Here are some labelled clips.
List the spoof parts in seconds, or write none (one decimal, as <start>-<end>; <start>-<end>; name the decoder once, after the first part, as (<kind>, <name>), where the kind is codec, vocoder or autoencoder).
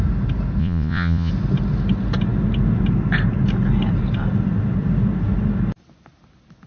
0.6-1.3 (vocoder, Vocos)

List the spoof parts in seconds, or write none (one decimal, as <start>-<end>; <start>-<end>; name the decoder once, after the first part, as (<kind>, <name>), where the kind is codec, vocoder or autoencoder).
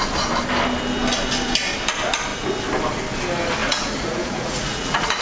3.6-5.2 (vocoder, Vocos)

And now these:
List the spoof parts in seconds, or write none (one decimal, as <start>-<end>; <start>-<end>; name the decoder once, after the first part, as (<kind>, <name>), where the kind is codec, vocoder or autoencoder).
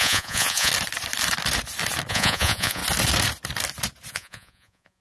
0.0-0.7 (vocoder, Vocos); 2.1-2.8; 4.1-5.0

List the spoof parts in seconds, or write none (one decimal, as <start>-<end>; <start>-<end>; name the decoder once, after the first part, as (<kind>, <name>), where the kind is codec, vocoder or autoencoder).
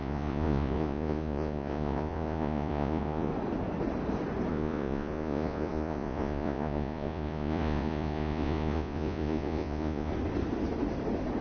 0.0-3.3 (vocoder, Vocos); 4.5-10.1